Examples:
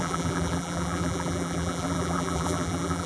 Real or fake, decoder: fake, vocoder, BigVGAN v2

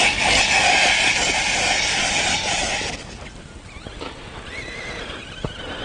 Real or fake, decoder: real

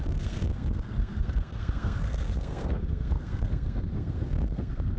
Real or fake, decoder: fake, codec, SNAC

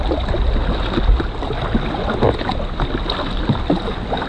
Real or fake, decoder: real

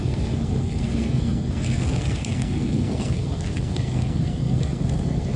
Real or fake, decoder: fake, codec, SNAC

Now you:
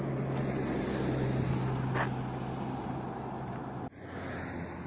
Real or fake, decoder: real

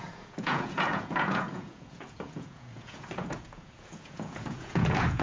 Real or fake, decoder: fake, vocoder, Vocos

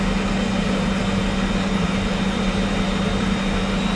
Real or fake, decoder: real